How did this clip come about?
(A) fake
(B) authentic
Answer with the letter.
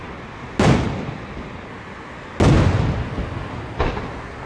B